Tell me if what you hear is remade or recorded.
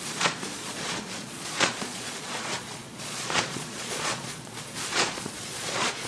remade